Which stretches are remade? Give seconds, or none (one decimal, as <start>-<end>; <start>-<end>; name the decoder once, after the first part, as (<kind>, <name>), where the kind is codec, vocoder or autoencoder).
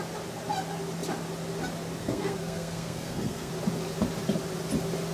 2.0-3.5 (codec, SNAC)